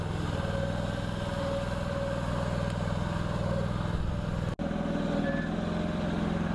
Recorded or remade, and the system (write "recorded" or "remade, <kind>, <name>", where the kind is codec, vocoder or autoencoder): recorded